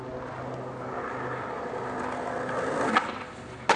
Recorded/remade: recorded